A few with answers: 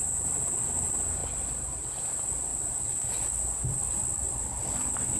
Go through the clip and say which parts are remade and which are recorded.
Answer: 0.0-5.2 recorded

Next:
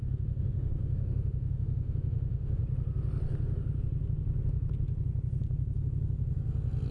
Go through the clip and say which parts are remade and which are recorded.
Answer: 0.0-2.6 remade; 2.6-6.9 recorded

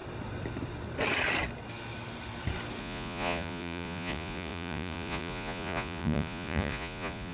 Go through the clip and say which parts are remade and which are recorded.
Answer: 0.0-2.8 recorded; 2.8-7.3 remade

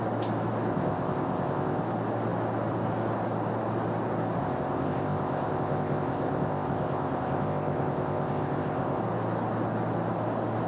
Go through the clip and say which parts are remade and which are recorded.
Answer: 0.0-0.7 recorded; 0.7-1.8 remade; 1.8-4.4 recorded; 4.4-9.0 remade; 9.0-10.7 recorded

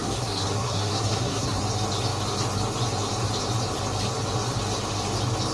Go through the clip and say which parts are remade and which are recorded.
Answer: 0.0-1.6 remade; 1.6-5.5 recorded

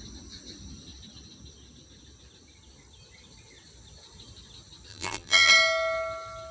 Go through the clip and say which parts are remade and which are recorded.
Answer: 0.0-4.9 recorded; 4.9-5.5 remade; 5.5-6.5 recorded

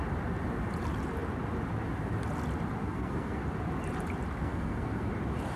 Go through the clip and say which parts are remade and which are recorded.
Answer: 0.0-2.8 recorded; 2.8-3.4 remade; 3.4-4.4 recorded; 4.4-5.1 remade; 5.1-5.6 recorded

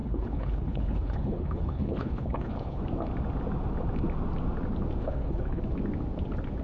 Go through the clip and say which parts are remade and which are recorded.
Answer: 0.0-2.8 remade; 2.8-5.0 recorded; 5.0-5.6 remade; 5.6-6.6 recorded